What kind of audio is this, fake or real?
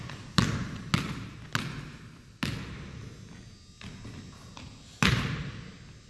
real